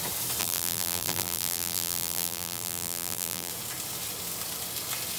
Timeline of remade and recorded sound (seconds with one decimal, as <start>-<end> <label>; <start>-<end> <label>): 0.0-0.4 recorded; 0.4-3.5 remade; 3.5-5.2 recorded